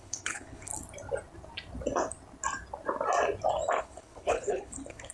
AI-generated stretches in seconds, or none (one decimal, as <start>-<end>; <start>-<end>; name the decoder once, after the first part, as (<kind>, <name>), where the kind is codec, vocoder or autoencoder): 0.0-0.7 (codec, HILCodec); 3.8-5.1